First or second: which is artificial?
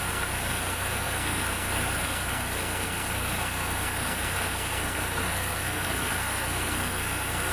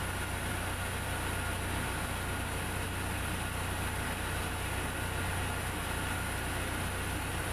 first